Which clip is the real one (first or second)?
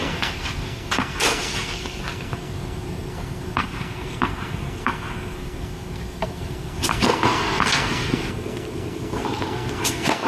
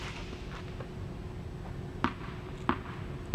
second